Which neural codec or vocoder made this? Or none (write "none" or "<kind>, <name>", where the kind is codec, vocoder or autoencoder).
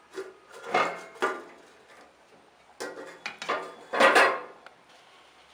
none